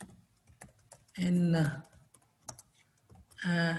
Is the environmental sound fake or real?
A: real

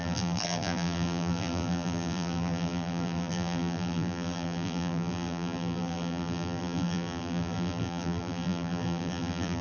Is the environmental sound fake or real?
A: fake